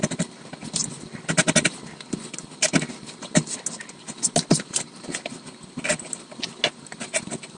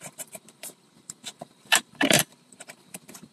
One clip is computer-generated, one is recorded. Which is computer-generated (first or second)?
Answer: second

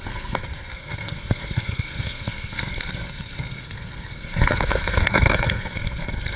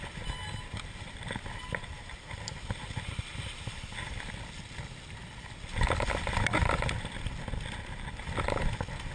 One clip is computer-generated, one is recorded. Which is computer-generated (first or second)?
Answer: first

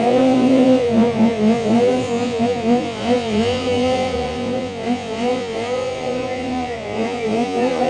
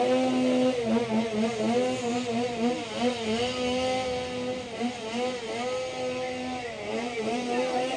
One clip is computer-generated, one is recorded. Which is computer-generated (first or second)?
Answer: first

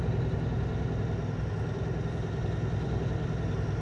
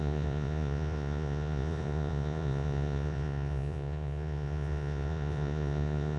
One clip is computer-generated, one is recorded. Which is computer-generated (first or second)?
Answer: second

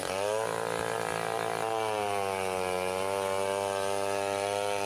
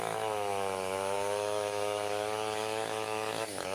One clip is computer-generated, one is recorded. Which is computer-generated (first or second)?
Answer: second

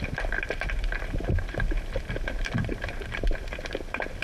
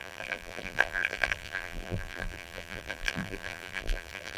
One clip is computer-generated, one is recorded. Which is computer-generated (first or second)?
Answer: second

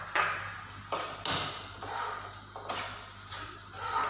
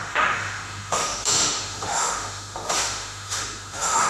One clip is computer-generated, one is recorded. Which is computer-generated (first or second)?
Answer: second